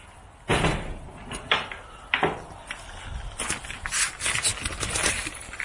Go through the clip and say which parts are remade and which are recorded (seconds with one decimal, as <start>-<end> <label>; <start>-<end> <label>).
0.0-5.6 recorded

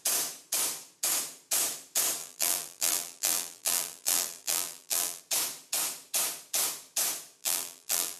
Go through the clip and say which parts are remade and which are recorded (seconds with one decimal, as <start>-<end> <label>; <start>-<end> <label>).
0.0-2.2 recorded; 2.2-5.2 remade; 5.2-7.4 recorded; 7.4-8.2 remade

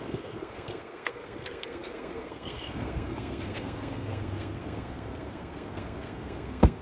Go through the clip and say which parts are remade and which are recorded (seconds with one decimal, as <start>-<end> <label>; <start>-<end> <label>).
0.0-6.8 remade

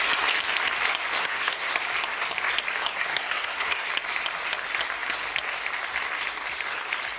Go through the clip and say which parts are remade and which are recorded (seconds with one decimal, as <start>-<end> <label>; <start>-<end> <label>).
0.0-1.2 recorded; 1.2-1.7 remade; 1.7-2.9 recorded; 2.9-3.9 remade; 3.9-7.2 recorded